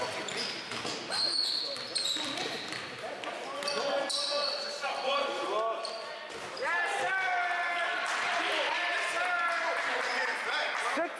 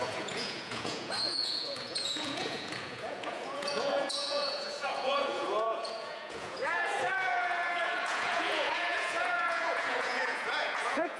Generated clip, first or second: second